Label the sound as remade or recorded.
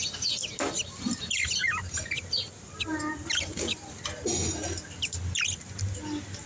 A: recorded